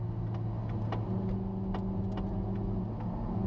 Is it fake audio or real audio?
real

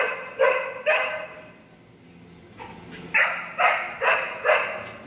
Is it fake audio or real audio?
real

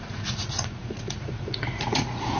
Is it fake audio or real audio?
fake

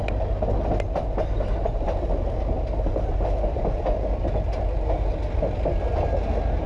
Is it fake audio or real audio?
real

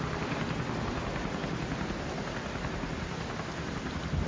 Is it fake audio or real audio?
real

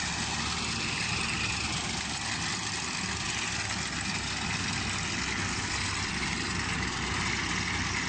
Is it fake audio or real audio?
real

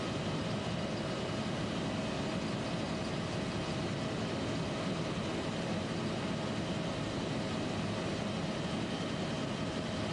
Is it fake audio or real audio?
real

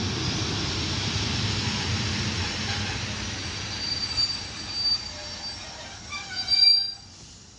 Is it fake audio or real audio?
real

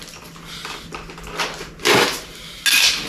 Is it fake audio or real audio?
real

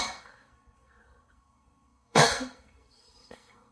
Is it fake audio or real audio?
fake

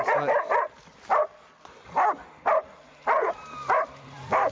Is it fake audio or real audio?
real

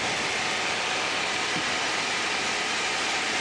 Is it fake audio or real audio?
real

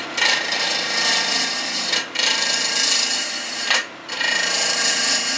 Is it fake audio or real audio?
fake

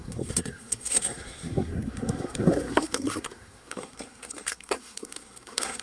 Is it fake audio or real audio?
fake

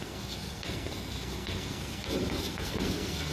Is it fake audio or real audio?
fake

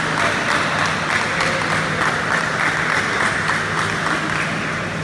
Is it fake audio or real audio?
real